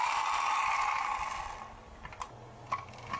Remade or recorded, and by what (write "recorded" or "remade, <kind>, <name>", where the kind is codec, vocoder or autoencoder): recorded